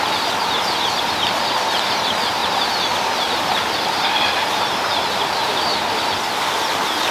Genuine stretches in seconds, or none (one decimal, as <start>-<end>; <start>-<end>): none